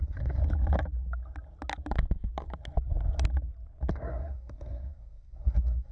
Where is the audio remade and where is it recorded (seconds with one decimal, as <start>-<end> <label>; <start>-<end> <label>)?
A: 0.0-0.4 remade; 0.4-3.9 recorded; 3.9-5.9 remade